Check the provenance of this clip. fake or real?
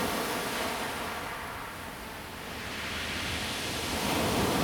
real